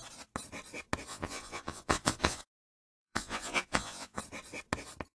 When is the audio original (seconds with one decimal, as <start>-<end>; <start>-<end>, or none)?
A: 0.0-1.1; 4.2-5.2